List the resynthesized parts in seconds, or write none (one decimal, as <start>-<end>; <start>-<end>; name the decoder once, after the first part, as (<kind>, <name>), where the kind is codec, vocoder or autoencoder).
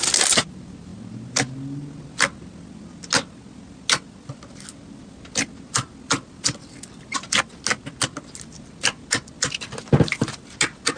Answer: none